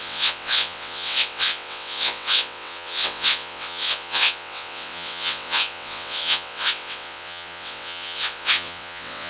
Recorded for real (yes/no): no